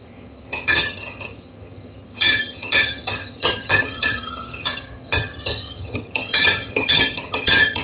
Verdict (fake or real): fake